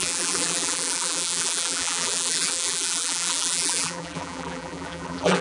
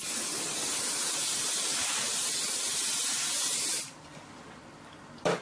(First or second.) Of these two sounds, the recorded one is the second